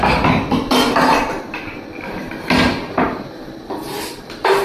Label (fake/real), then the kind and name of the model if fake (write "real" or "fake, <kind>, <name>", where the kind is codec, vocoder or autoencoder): real